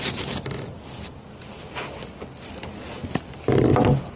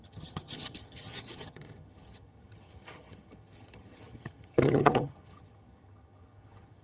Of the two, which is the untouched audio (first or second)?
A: first